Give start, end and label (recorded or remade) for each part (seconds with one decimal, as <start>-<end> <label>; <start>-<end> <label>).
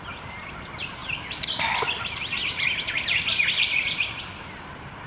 0.0-5.1 recorded